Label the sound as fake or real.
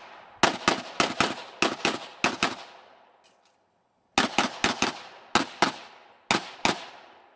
real